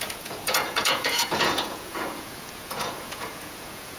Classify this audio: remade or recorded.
remade